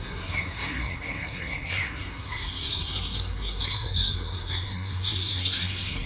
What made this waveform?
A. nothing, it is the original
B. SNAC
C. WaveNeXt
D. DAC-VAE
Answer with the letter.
B